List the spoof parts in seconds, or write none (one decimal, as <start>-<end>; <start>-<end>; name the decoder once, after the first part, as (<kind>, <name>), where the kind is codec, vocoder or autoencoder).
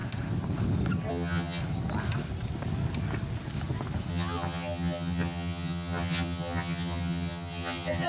1.1-1.6 (vocoder, HiFi-GAN); 4.1-8.1